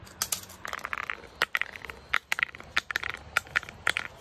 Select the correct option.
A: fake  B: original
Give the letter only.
B